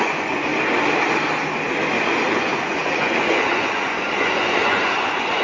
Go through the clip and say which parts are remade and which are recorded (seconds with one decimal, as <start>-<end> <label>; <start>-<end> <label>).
0.0-0.5 remade; 0.5-2.3 recorded; 2.3-5.4 remade